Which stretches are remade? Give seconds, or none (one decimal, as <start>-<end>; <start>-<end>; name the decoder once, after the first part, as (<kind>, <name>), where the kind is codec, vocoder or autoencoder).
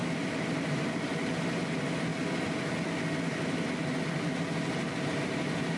0.0-0.9 (vocoder, BigVGAN v2)